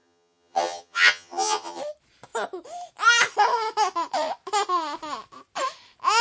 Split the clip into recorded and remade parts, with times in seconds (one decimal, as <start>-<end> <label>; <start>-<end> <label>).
0.0-1.8 remade; 1.8-6.2 recorded